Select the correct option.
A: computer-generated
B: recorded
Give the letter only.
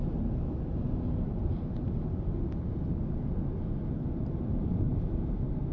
B